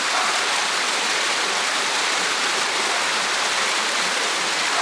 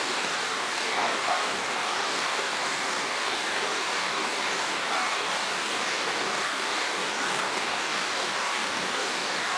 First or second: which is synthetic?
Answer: second